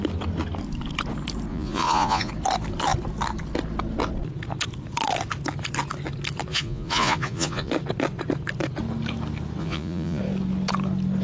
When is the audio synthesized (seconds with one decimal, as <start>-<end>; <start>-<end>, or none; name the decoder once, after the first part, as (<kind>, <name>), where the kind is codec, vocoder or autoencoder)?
1.5-2.3 (vocoder, Vocos); 6.5-7.7; 9.6-10.2